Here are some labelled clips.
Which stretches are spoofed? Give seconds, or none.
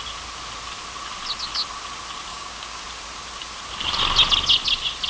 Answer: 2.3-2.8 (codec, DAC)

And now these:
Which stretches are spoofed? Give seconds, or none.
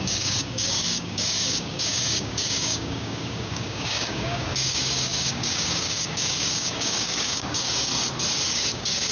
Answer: 0.0-7.9 (codec, DAC); 8.5-9.1